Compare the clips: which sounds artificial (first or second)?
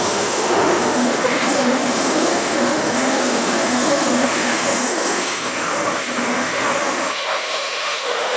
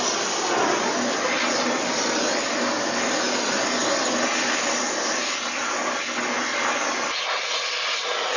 first